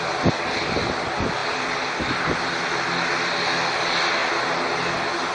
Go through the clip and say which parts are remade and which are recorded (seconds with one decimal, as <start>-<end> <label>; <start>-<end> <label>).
0.0-5.3 recorded